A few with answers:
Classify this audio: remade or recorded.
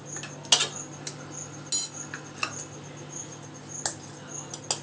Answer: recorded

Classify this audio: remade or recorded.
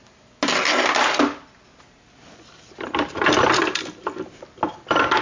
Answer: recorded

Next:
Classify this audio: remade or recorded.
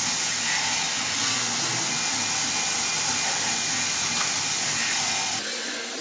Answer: recorded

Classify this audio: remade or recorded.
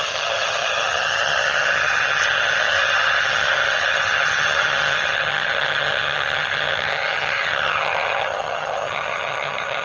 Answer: remade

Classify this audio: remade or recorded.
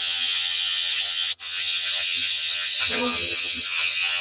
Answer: remade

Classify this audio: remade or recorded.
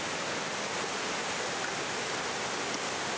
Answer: recorded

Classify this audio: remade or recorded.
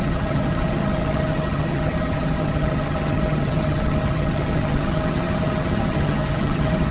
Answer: remade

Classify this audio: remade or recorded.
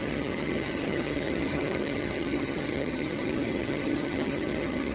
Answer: remade